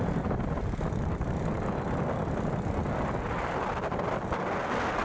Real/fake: real